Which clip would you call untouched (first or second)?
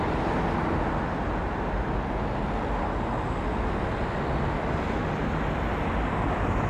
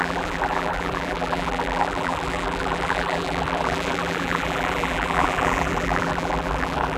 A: first